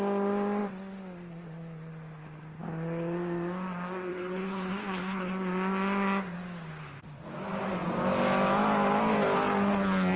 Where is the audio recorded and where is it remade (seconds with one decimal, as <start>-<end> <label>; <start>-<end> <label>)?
0.0-4.1 recorded; 4.1-5.3 remade; 5.3-10.2 recorded